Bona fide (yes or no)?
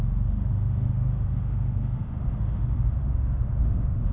no